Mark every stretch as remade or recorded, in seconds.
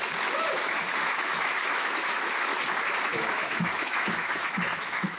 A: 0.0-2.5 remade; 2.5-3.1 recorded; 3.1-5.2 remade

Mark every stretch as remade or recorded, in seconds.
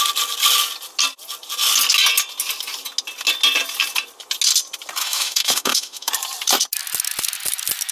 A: 0.0-5.0 recorded; 5.0-6.1 remade; 6.1-7.9 recorded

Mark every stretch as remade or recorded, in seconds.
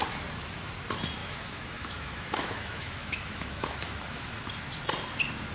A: 0.0-1.2 recorded; 1.2-4.5 remade; 4.5-5.5 recorded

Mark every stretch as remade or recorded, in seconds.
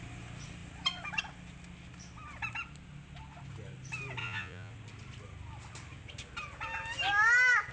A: 0.0-4.2 recorded; 4.2-4.7 remade; 4.7-7.7 recorded